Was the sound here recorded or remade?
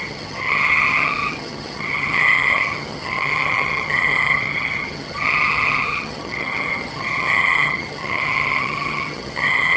remade